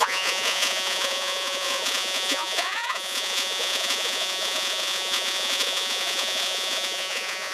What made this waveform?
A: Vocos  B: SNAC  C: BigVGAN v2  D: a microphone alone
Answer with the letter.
A